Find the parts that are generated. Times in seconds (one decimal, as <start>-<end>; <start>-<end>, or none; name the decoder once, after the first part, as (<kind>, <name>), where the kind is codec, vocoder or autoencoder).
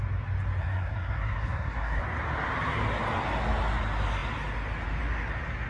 0.6-2.0 (codec, SNAC)